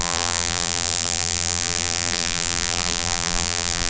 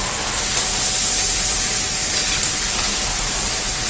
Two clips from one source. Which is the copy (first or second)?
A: first